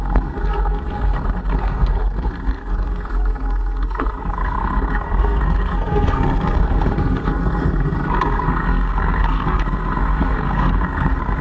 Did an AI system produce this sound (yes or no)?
yes